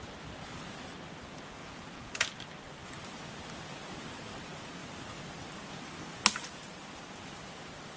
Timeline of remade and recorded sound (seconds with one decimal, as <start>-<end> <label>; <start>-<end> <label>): 0.0-1.6 recorded; 1.6-2.1 remade; 2.1-8.0 recorded